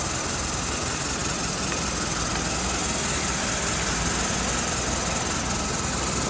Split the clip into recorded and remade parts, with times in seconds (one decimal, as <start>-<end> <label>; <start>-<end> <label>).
0.0-6.3 recorded